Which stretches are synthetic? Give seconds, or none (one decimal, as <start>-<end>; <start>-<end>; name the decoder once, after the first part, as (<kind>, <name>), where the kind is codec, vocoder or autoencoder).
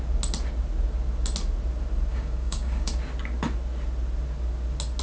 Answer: 2.1-2.9 (codec, DAC)